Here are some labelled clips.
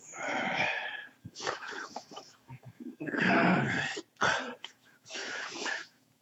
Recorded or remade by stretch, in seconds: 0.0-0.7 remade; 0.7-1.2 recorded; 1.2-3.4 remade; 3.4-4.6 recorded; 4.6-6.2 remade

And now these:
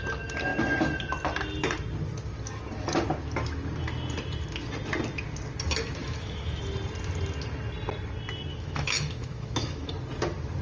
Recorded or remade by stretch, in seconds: 0.0-6.0 recorded; 6.0-6.6 remade; 6.6-8.5 recorded; 8.5-9.9 remade; 9.9-10.6 recorded

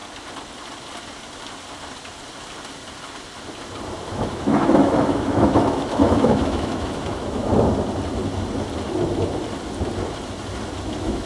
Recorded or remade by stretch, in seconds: 0.0-4.1 recorded; 4.1-7.5 remade; 7.5-10.9 recorded; 10.9-11.3 remade

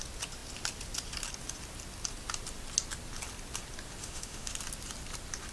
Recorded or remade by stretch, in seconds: 0.0-4.0 recorded; 4.0-4.5 remade; 4.5-5.5 recorded

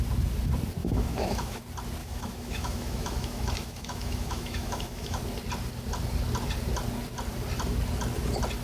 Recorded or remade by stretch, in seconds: 0.0-0.8 recorded; 0.8-1.6 remade; 1.6-2.0 recorded; 2.0-5.2 remade; 5.2-8.6 recorded

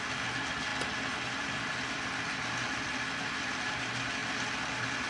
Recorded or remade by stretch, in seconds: 0.0-5.1 recorded